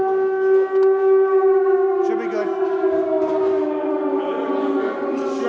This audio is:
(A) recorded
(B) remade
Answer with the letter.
A